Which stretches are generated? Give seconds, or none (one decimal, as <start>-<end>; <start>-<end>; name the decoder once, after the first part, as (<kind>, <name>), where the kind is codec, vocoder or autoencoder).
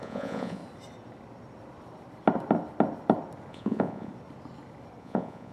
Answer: 0.0-0.6 (vocoder, Vocos); 3.5-4.1; 5.0-5.5